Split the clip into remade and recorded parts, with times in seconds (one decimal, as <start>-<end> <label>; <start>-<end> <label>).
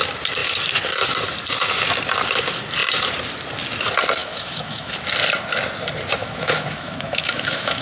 0.0-4.2 recorded; 4.2-4.9 remade; 4.9-6.2 recorded; 6.2-7.8 remade